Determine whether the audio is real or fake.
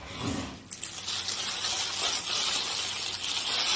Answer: real